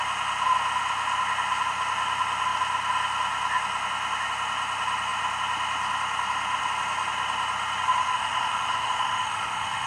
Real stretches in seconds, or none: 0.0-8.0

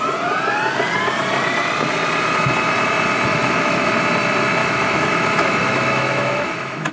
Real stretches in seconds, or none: 0.0-3.3; 3.9-4.6

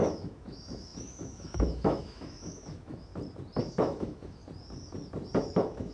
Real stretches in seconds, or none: 3.1-3.6; 4.4-5.4

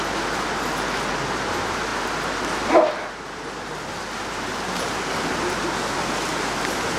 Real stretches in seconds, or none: 0.0-7.0